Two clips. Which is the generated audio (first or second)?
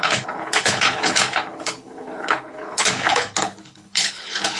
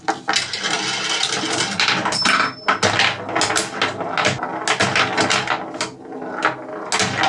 first